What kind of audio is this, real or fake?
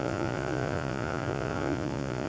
fake